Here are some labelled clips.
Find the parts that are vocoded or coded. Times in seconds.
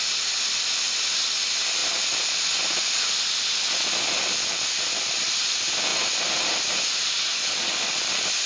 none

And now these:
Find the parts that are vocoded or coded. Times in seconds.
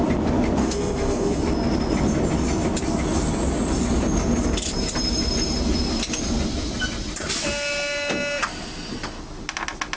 0.6-1.4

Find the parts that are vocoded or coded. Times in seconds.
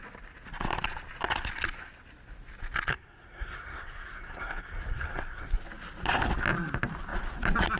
2.9-5.6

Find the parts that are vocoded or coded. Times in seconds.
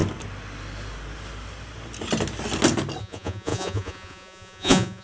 3.0-5.0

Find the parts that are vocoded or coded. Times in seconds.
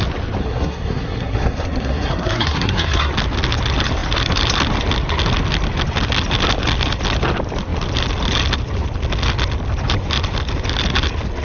0.4-3.1